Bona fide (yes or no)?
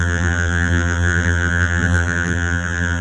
no